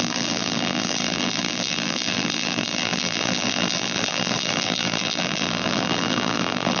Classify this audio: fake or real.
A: fake